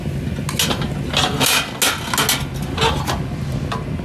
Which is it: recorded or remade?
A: recorded